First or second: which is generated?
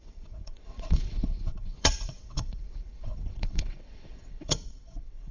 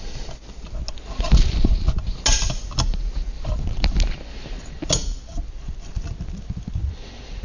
first